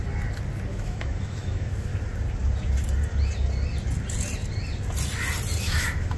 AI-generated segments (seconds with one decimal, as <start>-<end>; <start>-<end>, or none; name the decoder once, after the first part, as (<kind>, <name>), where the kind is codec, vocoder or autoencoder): 0.7-1.9 (autoencoder, DAC-VAE); 5.6-6.2